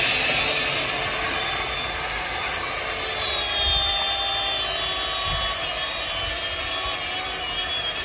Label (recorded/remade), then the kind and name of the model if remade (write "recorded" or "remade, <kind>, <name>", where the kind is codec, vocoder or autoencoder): recorded